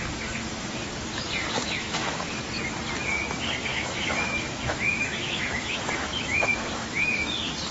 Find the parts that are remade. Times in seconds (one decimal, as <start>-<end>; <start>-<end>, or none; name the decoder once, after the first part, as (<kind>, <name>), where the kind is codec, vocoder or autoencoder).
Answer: 1.6-2.4 (autoencoder, DAC-VAE); 3.7-7.3